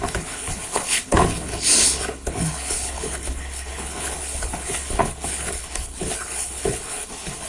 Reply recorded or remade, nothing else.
remade